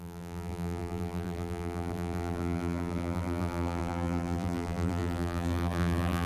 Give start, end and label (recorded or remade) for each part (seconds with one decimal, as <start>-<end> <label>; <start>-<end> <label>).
0.0-6.3 remade